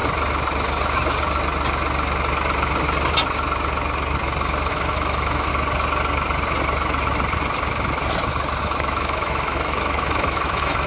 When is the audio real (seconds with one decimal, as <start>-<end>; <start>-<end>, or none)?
0.0-4.7; 5.5-8.6